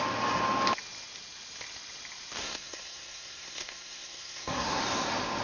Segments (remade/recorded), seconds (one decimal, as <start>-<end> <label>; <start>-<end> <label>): 0.0-2.4 recorded; 2.4-4.8 remade; 4.8-5.4 recorded